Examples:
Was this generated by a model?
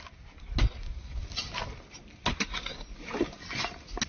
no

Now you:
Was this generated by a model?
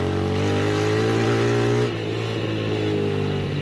no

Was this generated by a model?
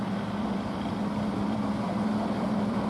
yes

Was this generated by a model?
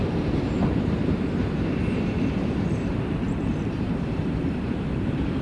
yes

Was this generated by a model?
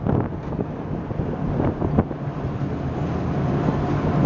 no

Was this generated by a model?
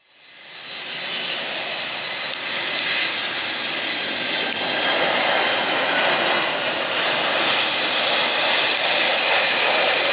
no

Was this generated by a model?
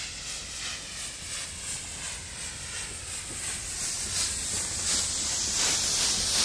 no